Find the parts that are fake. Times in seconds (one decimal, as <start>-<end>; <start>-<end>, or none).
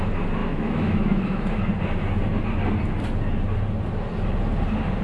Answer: 0.4-1.6